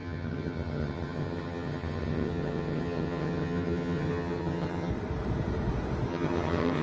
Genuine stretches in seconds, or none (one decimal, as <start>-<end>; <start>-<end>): 4.9-6.1